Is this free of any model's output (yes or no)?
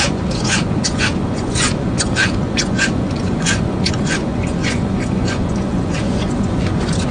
no